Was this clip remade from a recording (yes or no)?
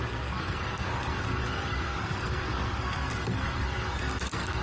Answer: yes